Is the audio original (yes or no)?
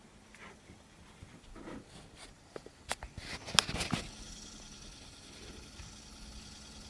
yes